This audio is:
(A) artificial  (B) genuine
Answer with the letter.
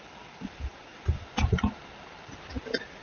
B